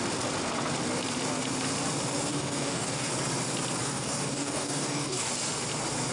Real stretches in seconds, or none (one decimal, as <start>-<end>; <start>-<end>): 0.0-2.3; 3.1-3.8; 5.3-6.1